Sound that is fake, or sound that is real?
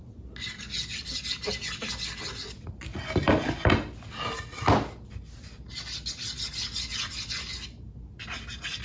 real